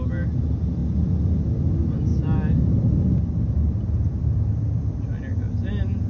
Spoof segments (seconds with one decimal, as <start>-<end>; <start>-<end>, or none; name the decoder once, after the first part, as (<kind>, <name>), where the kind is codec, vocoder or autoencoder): none